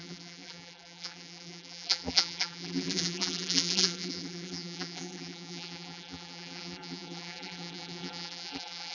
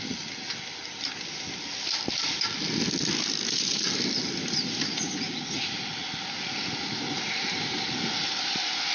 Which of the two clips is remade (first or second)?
first